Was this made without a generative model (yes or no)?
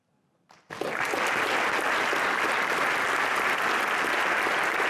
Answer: yes